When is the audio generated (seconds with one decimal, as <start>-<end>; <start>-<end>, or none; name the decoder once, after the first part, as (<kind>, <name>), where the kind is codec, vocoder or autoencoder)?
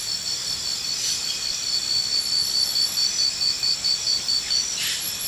none